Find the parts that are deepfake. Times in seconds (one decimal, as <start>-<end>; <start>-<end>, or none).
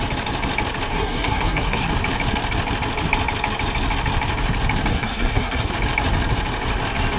0.9-1.9; 4.9-5.7